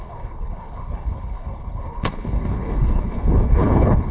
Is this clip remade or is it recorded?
remade